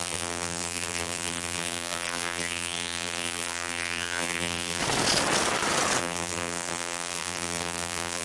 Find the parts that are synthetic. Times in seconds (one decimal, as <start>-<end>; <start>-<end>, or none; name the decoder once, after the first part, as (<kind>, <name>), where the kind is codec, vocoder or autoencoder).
0.0-4.8 (vocoder, BigVGAN v2); 6.0-8.2